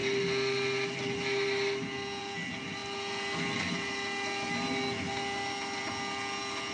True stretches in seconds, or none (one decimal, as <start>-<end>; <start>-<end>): 0.0-6.7